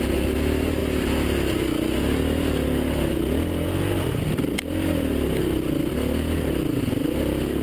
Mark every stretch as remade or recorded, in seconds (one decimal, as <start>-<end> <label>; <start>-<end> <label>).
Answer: 0.0-7.6 recorded